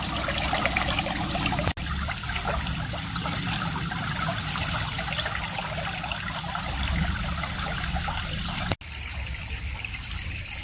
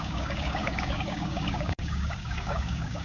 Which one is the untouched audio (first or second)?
first